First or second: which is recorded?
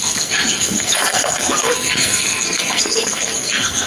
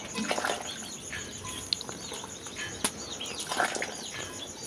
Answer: second